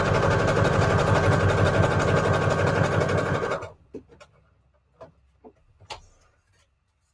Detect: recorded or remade recorded